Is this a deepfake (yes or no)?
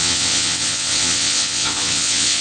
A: yes